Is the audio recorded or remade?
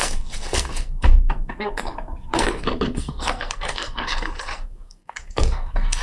remade